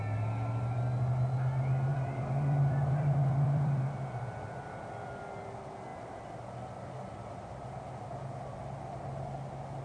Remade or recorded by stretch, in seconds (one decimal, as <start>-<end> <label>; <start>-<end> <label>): 0.0-1.9 recorded; 1.9-5.2 remade; 5.2-9.8 recorded